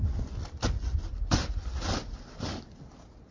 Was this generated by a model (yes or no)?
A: no